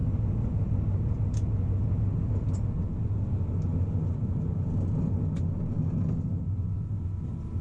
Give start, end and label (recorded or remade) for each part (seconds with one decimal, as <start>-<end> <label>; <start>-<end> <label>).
0.0-7.6 recorded

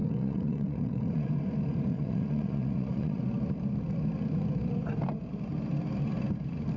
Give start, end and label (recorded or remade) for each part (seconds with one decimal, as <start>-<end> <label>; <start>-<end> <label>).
0.0-1.3 remade; 1.3-1.9 recorded; 1.9-3.2 remade; 3.2-6.8 recorded

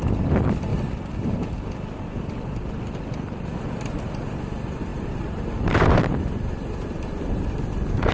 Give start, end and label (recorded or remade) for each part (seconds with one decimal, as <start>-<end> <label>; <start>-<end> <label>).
0.0-8.1 recorded

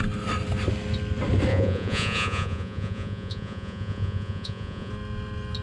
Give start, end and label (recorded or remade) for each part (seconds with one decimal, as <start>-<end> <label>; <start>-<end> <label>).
0.0-1.5 recorded; 1.5-4.9 remade; 4.9-5.6 recorded

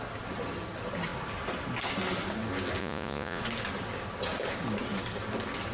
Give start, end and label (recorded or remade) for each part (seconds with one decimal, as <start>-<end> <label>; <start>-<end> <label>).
0.0-2.8 recorded; 2.8-3.4 remade; 3.4-5.7 recorded

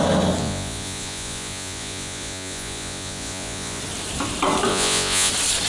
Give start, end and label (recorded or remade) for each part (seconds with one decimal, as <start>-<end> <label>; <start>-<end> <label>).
0.0-0.4 recorded; 0.4-3.8 remade; 3.8-4.7 recorded; 4.7-5.3 remade; 5.3-5.7 recorded

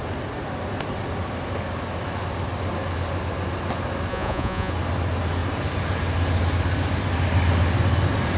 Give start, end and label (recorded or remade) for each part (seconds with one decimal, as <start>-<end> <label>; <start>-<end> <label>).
0.0-4.1 recorded; 4.1-4.7 remade; 4.7-8.4 recorded